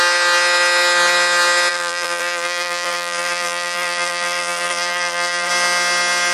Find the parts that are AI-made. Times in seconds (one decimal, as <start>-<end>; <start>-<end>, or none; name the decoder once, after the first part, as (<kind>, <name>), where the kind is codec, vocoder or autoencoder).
1.7-5.5 (vocoder, BigVGAN v2)